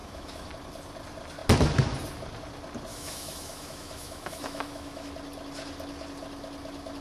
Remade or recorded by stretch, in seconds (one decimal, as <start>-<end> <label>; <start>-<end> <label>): 0.0-0.5 remade; 0.5-2.9 recorded; 2.9-5.1 remade; 5.1-7.0 recorded